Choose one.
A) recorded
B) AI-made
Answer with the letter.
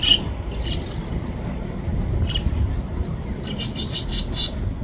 A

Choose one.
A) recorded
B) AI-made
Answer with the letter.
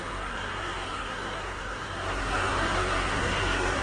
B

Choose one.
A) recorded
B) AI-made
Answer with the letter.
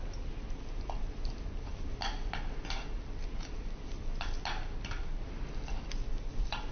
A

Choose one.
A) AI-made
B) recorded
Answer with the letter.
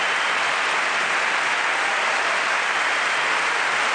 B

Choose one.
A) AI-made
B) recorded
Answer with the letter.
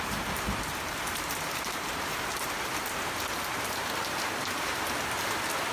A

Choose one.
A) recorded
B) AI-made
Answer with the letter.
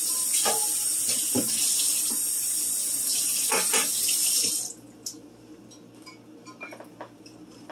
A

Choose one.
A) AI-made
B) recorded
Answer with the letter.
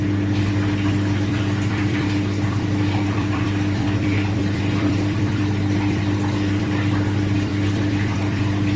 A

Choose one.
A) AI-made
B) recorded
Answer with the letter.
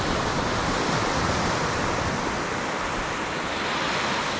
B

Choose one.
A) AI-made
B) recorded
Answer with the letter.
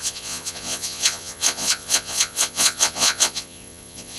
A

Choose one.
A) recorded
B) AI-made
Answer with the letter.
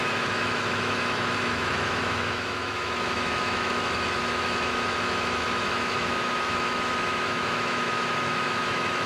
B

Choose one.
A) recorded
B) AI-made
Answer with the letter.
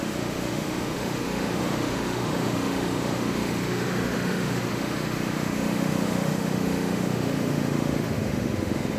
B